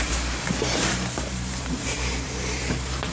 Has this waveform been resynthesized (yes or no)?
yes